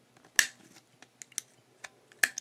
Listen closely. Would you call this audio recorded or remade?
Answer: recorded